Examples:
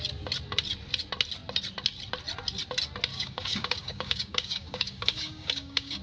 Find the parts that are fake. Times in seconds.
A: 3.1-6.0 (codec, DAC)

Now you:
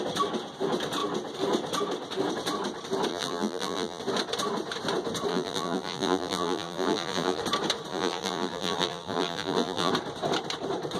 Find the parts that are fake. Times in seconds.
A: 3.1-4.0 (vocoder, BigVGAN v2); 5.3-7.4; 7.9-9.9

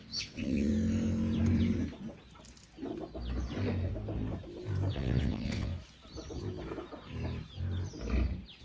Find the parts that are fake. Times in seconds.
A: 0.0-0.7 (vocoder, WaveNeXt); 4.9-5.7

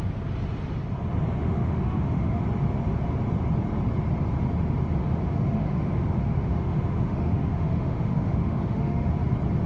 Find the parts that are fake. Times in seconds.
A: 1.4-2.4 (autoencoder, DAC-VAE); 5.0-9.1